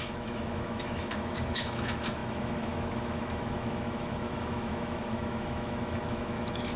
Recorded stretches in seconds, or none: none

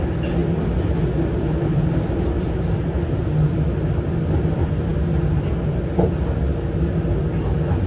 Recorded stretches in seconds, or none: 0.0-7.9